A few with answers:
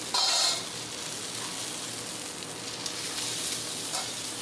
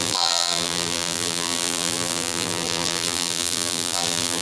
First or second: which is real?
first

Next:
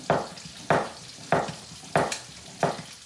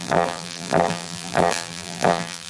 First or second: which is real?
first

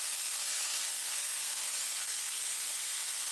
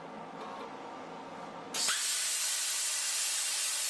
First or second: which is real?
second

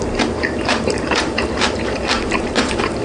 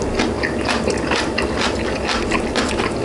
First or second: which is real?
second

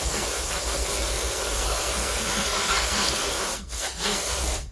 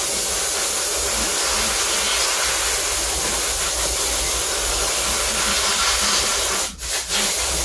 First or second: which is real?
second